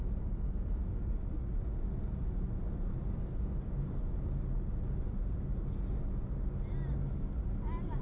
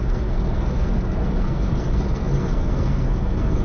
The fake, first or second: second